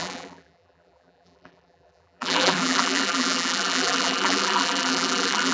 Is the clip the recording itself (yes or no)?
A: no